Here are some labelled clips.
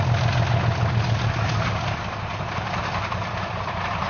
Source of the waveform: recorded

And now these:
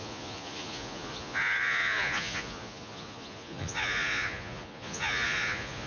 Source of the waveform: remade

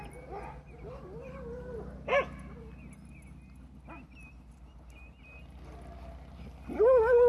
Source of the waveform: recorded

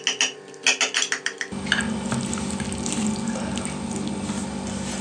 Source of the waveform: recorded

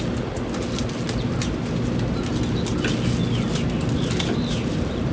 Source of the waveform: recorded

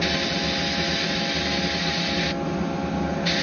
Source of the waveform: recorded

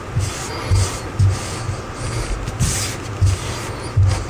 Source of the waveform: recorded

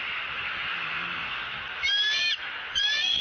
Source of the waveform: recorded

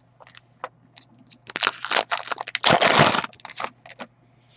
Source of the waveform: recorded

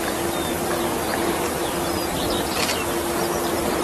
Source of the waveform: recorded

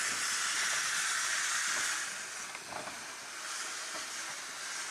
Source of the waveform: recorded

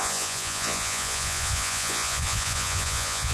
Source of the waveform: remade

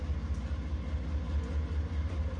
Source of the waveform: recorded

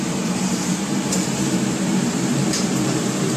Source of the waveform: remade